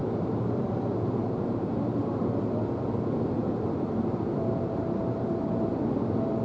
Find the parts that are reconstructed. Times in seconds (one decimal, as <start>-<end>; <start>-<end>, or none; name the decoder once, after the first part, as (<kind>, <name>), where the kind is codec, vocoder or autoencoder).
0.0-3.0 (vocoder, BigVGAN v2)